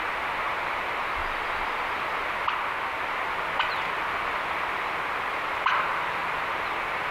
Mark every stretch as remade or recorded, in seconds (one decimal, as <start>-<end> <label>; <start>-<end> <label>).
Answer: 0.0-1.2 remade; 1.2-5.5 recorded; 5.5-7.1 remade